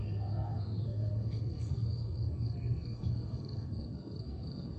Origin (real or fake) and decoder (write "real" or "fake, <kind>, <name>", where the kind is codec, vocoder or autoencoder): fake, codec, SNAC